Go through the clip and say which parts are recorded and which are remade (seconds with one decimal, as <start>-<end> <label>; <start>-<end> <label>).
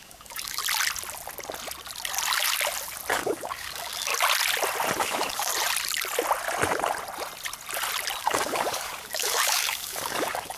0.0-0.6 remade; 0.6-3.1 recorded; 3.1-4.1 remade; 4.1-5.0 recorded; 5.0-5.5 remade; 5.5-8.2 recorded; 8.2-10.6 remade